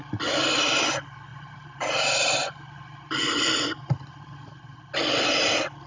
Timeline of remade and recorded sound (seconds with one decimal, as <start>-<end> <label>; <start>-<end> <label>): 0.0-1.3 recorded; 1.3-4.8 remade; 4.8-5.9 recorded